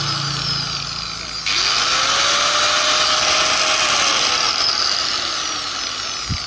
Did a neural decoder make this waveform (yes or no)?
no